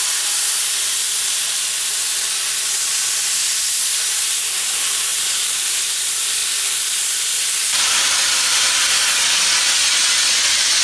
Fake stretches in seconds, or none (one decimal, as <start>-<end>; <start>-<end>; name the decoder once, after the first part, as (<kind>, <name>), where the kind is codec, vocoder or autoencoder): none